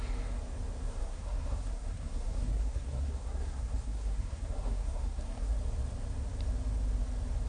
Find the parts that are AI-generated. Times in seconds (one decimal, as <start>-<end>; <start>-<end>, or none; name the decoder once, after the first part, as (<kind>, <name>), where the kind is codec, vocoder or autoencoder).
1.0-5.5 (codec, SNAC)